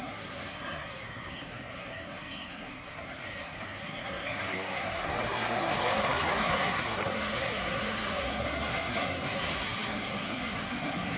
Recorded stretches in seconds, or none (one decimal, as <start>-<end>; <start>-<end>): none